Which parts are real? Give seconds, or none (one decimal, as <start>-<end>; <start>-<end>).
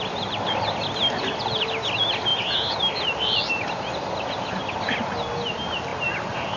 0.0-6.6